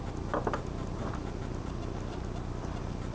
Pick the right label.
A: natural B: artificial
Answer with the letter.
A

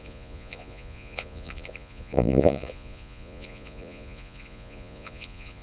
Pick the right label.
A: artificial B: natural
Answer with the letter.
A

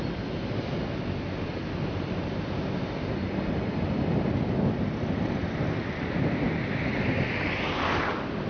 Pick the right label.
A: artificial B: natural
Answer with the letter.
B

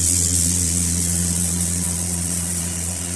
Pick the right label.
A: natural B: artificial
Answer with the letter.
B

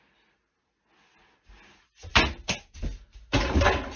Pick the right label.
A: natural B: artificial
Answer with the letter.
A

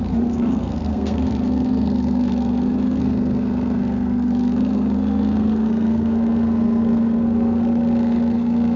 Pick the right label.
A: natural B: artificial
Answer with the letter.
B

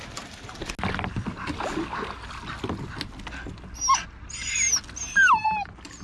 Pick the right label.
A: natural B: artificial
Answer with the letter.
A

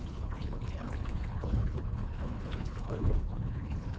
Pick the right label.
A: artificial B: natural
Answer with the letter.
A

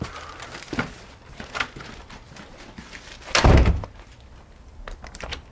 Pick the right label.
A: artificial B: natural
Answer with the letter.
B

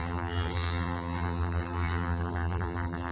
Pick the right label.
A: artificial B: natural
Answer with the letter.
A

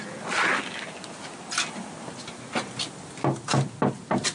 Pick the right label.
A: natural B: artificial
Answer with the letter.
A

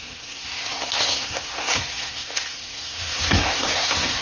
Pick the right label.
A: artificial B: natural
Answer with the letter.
A